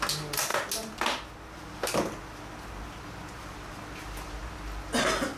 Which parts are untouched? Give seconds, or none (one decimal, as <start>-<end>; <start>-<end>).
0.0-5.4